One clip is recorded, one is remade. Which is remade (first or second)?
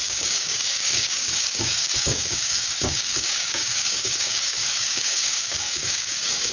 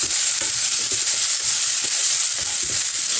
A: first